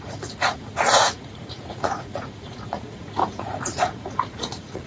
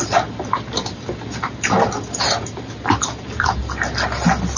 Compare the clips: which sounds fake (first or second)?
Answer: first